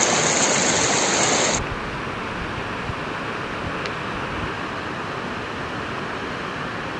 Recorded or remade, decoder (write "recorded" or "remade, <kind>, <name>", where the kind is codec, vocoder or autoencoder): recorded